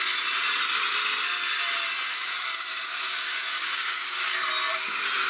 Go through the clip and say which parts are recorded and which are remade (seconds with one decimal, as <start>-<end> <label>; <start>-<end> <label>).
0.0-2.1 recorded; 2.1-4.3 remade; 4.3-5.3 recorded